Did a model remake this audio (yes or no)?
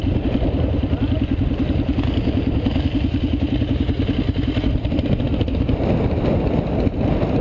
no